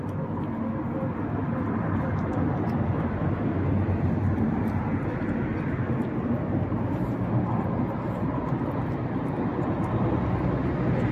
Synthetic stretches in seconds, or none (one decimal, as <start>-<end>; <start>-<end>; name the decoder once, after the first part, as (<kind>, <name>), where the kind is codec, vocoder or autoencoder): none